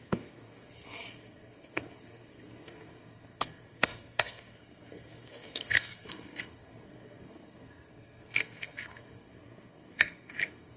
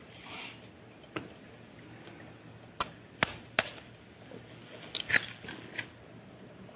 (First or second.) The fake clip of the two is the first